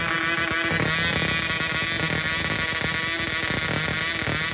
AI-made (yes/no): no